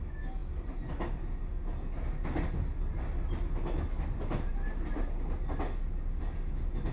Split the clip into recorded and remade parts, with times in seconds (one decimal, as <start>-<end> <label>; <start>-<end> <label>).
0.0-6.9 recorded